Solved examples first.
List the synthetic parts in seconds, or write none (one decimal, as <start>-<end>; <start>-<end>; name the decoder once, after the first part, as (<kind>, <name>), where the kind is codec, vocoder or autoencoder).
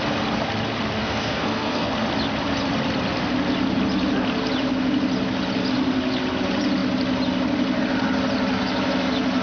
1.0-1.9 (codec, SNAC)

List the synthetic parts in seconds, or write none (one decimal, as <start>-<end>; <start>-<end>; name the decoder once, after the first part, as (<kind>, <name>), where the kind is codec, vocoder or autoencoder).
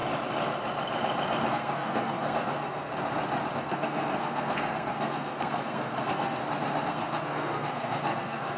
1.5-2.9 (codec, SNAC); 3.6-6.4; 6.9-8.6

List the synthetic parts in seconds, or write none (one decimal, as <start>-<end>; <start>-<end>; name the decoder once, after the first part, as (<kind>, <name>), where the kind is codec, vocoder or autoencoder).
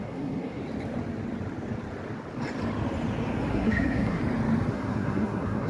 0.0-0.6 (codec, SNAC); 3.5-4.2; 4.7-5.7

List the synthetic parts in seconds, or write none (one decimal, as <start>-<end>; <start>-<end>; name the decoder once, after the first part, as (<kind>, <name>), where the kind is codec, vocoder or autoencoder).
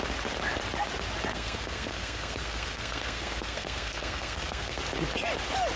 1.3-4.8 (codec, SNAC)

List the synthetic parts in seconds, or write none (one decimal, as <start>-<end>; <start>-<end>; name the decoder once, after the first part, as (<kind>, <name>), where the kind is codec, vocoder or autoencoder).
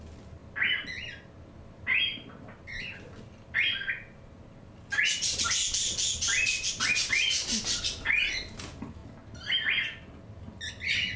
none